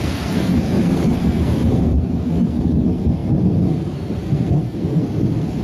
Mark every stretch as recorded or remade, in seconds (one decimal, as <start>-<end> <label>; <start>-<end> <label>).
0.0-5.6 remade